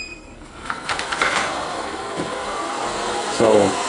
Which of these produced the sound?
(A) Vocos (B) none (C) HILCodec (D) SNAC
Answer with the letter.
D